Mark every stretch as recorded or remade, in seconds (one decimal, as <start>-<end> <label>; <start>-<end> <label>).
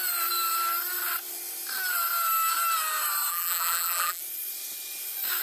0.0-3.3 recorded; 3.3-4.2 remade; 4.2-5.4 recorded